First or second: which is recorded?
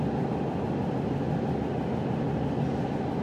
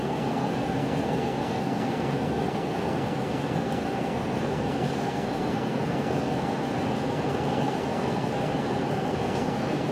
first